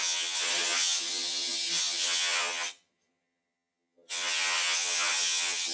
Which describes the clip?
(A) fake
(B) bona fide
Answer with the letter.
A